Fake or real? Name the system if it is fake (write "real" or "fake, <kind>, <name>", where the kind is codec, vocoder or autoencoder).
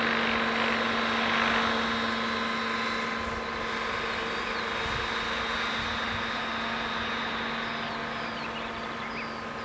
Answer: real